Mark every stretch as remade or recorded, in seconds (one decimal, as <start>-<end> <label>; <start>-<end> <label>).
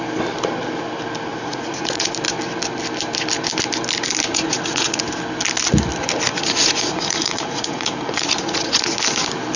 0.0-1.3 recorded; 1.3-2.1 remade; 2.1-4.3 recorded; 4.3-5.0 remade; 5.0-6.3 recorded; 6.3-9.0 remade; 9.0-9.6 recorded